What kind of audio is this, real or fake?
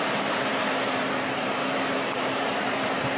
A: fake